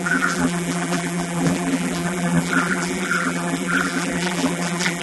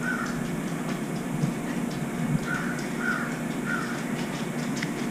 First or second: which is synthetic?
first